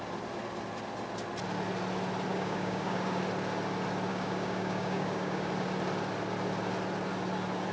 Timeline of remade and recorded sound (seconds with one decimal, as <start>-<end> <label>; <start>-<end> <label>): 0.0-2.3 recorded; 2.3-3.2 remade; 3.2-4.1 recorded; 4.1-5.5 remade; 5.5-7.7 recorded